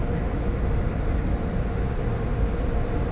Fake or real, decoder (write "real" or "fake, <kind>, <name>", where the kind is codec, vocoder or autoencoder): real